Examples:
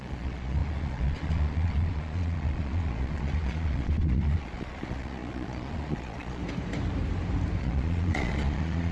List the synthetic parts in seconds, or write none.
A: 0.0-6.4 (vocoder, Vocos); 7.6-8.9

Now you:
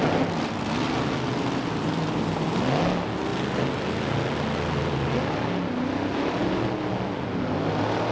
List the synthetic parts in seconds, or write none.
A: none

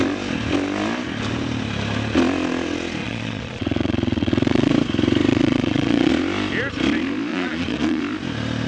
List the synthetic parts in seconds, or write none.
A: 3.0-4.7 (vocoder, Vocos); 5.3-6.1; 7.3-8.0

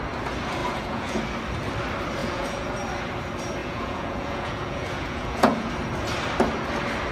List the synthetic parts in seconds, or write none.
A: 0.6-1.2 (vocoder, Vocos); 2.2-2.7; 3.6-5.7

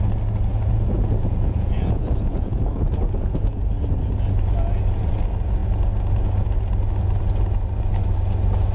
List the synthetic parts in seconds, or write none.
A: 0.5-3.7 (vocoder, Vocos)

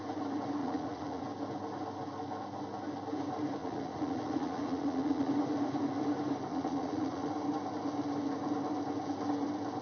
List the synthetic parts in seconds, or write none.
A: 0.6-1.2 (vocoder, Vocos); 3.6-5.3; 6.5-7.3

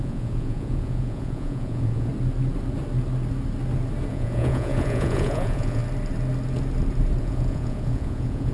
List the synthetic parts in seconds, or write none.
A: 0.0-2.1 (vocoder, Vocos); 4.1-5.8; 7.2-8.5